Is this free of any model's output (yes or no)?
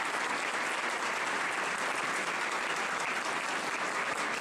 yes